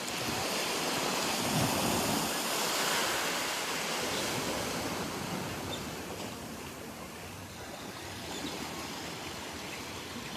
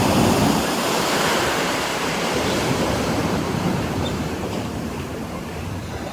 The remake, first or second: second